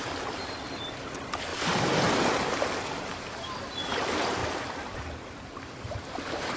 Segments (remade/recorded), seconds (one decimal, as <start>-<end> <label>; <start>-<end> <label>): 0.0-6.6 recorded